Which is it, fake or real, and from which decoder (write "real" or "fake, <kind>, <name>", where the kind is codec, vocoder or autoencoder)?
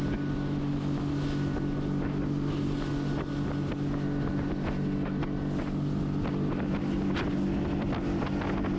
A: real